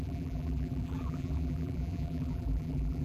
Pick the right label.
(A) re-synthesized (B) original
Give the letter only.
A